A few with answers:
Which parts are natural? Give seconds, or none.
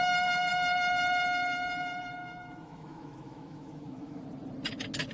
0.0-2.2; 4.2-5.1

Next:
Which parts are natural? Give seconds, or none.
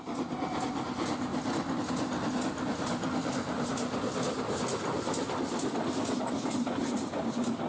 0.0-7.7